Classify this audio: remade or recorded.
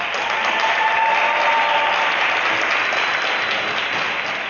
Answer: recorded